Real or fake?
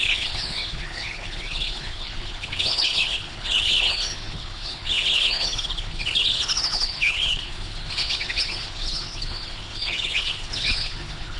fake